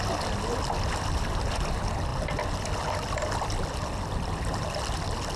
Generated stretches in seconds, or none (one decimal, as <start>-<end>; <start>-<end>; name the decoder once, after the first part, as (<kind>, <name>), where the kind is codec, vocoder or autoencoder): none